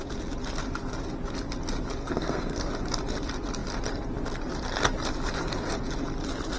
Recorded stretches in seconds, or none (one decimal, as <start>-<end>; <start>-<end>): 0.0-2.0; 2.7-6.6